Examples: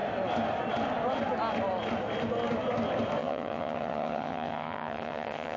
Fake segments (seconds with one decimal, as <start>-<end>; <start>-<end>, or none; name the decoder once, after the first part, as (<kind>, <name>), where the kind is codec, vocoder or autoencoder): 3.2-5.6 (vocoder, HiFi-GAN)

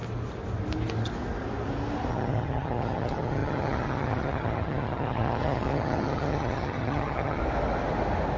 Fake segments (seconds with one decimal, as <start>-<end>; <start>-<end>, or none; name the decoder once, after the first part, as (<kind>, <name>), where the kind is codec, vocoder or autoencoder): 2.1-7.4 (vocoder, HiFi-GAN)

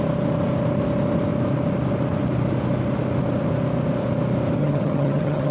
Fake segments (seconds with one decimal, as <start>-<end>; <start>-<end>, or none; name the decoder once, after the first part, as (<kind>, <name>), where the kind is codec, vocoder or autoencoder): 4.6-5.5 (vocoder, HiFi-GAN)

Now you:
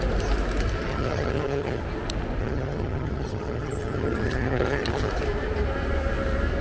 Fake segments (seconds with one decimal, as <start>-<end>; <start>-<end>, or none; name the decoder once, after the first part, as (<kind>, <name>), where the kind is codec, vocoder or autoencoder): 0.9-1.8 (vocoder, HiFi-GAN); 2.4-5.1

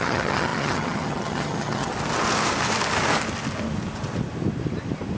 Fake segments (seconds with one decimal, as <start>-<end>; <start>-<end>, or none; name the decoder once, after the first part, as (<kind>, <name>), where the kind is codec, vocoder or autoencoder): 0.0-1.9 (vocoder, HiFi-GAN)

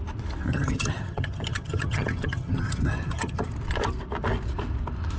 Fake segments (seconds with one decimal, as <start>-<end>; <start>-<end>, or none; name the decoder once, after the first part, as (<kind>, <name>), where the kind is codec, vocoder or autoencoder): 0.5-3.5 (vocoder, HiFi-GAN)

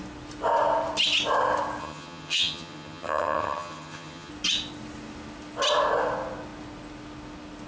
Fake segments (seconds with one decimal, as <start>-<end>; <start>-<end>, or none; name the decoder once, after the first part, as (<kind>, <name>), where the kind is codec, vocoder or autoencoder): 1.8-4.3 (vocoder, HiFi-GAN)